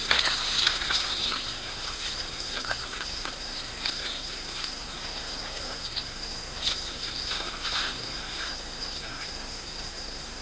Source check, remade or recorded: remade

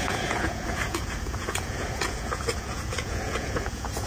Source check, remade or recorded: remade